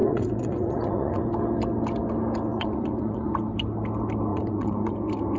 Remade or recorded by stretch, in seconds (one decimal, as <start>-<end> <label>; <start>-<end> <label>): 0.0-1.2 remade; 1.2-2.5 recorded; 2.5-3.3 remade; 3.3-4.3 recorded; 4.3-4.9 remade; 4.9-5.4 recorded